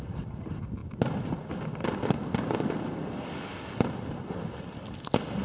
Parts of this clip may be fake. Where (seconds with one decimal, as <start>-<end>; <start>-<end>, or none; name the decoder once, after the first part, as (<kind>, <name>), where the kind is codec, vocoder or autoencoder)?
none